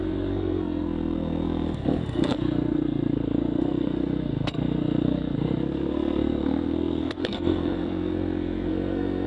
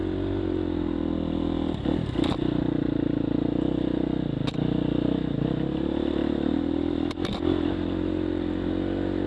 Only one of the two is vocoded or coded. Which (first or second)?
first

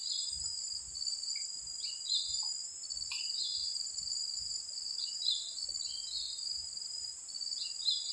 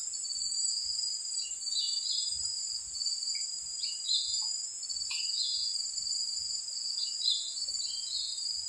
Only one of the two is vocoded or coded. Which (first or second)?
second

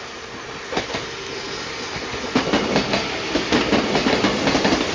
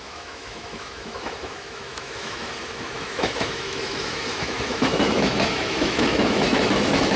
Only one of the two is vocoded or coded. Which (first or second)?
second